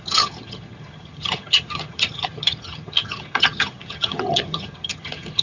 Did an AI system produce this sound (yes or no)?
yes